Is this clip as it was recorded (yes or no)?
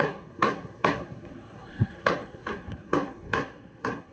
no